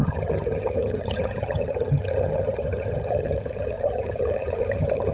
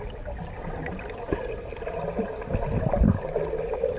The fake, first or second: first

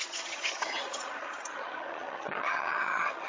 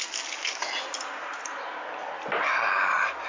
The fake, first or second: first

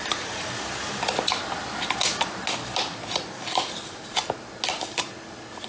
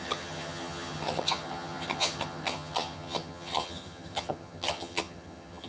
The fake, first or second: second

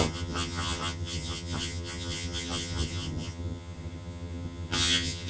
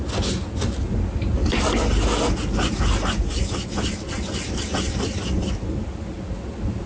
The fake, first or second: first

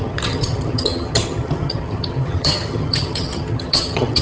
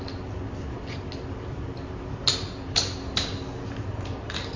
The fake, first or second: first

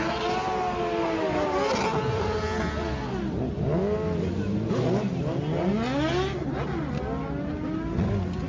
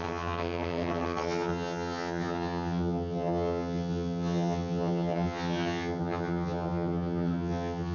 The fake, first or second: second